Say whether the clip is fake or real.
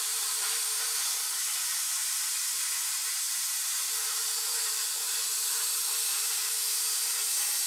fake